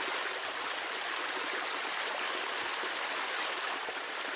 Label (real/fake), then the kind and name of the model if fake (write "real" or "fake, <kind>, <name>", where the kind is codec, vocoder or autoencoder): real